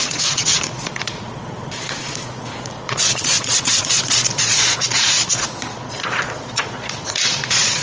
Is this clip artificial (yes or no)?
yes